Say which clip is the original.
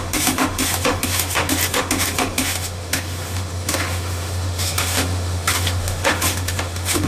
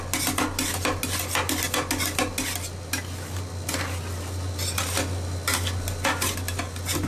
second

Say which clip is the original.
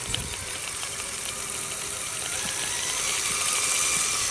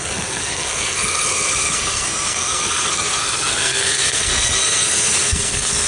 first